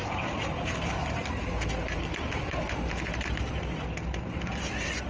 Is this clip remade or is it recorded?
recorded